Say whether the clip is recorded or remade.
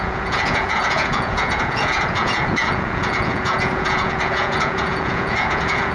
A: remade